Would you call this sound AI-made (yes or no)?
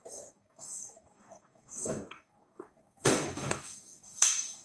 yes